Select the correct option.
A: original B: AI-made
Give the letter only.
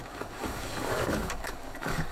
B